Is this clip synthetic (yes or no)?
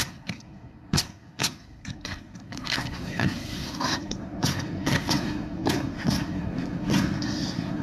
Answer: yes